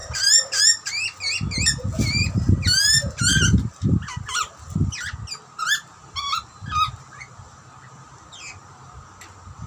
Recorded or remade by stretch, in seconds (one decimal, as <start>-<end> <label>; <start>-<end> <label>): 0.0-0.6 remade; 0.6-9.7 recorded